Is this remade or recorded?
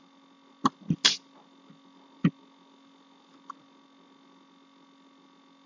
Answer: recorded